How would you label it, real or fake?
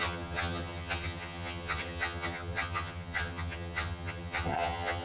fake